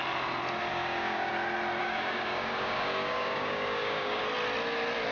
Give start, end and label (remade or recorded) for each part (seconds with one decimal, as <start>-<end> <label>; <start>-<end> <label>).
0.0-0.7 recorded; 0.7-1.3 remade; 1.3-1.8 recorded; 1.8-4.2 remade; 4.2-5.1 recorded